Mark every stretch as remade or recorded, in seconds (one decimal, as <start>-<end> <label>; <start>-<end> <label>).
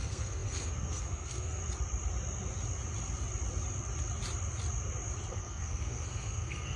0.0-1.6 remade; 1.6-5.3 recorded; 5.3-6.8 remade